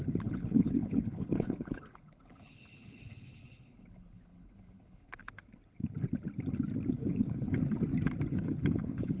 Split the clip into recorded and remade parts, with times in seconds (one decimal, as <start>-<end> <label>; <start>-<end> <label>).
0.0-5.2 remade; 5.2-6.9 recorded; 6.9-7.6 remade; 7.6-8.3 recorded; 8.3-9.2 remade

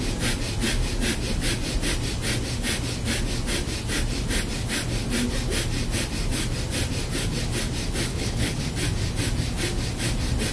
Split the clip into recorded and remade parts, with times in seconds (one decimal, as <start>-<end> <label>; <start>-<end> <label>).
0.0-8.1 recorded; 8.1-8.6 remade; 8.6-10.5 recorded

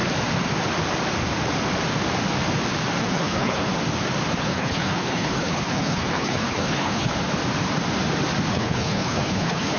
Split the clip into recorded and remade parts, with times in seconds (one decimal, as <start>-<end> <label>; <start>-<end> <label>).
0.0-3.0 recorded; 3.0-3.7 remade; 3.7-4.4 recorded; 4.4-7.1 remade; 7.1-8.5 recorded; 8.5-9.8 remade

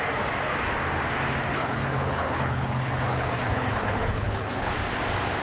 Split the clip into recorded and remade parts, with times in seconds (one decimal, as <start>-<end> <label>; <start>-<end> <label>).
0.0-1.5 recorded; 1.5-4.7 remade; 4.7-5.4 recorded

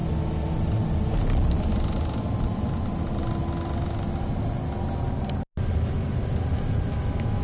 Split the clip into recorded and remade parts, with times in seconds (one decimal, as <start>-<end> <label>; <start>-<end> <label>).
0.0-7.4 recorded

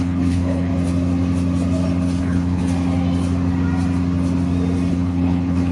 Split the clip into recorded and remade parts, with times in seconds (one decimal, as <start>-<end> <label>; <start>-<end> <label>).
0.0-0.7 remade; 0.7-2.2 recorded; 2.2-2.6 remade; 2.6-4.9 recorded; 4.9-5.7 remade